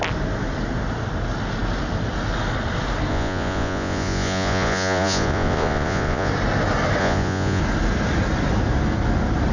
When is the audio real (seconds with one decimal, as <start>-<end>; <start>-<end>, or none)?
0.0-3.1; 6.3-7.0; 7.6-9.5